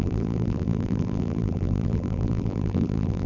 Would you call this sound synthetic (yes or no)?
yes